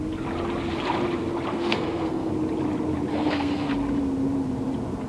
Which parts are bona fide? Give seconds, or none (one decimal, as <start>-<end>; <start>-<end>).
0.0-1.5; 2.3-3.1; 3.7-5.1